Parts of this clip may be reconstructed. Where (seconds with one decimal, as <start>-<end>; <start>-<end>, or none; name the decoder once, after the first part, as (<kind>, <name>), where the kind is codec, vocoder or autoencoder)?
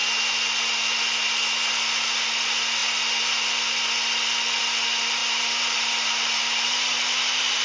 5.2-7.6 (vocoder, BigVGAN v2)